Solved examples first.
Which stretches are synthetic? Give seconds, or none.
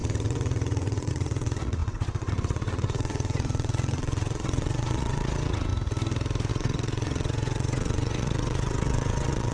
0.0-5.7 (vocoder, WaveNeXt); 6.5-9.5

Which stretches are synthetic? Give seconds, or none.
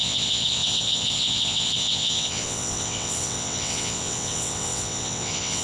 0.0-5.6 (vocoder, WaveNeXt)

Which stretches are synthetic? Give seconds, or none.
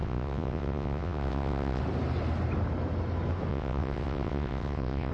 0.0-1.8 (vocoder, WaveNeXt); 3.5-5.1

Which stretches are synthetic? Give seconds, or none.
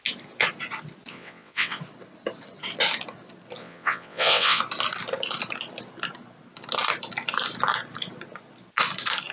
1.1-1.8 (vocoder, WaveNeXt); 3.6-4.6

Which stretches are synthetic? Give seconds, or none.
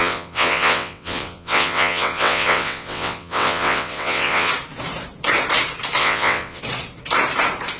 0.0-4.5 (vocoder, WaveNeXt); 6.0-6.6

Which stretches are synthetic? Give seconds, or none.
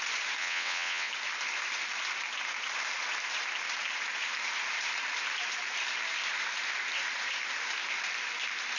0.4-1.1 (vocoder, WaveNeXt)